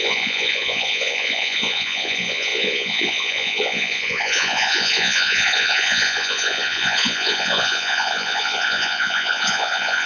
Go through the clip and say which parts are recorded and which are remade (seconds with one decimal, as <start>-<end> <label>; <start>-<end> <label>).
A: 0.0-10.1 remade